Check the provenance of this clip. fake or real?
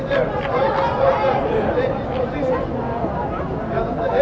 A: real